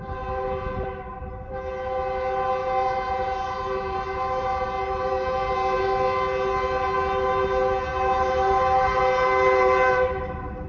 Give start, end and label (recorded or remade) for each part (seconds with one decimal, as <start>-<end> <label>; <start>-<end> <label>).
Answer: 0.0-2.6 recorded; 2.6-5.8 remade; 5.8-7.9 recorded; 7.9-9.0 remade; 9.0-10.7 recorded